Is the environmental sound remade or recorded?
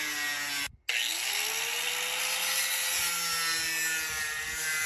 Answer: recorded